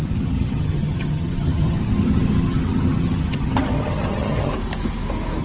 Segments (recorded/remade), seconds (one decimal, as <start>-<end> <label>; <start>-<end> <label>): 0.0-4.5 remade; 4.5-5.4 recorded